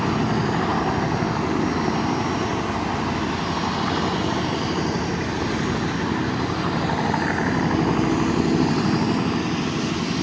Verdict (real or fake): real